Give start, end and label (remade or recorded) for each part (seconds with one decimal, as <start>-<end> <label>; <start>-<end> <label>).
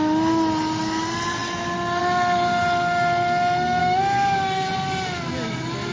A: 0.0-3.8 recorded; 3.8-4.7 remade; 4.7-5.9 recorded